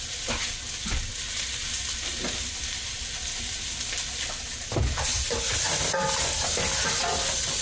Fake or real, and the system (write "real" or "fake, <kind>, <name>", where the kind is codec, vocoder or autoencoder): real